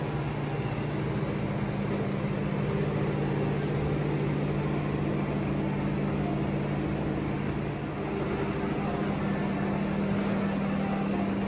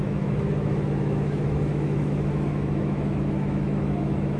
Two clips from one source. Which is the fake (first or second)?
second